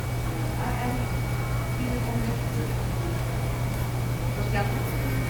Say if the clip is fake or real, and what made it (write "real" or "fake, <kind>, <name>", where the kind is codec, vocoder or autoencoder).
real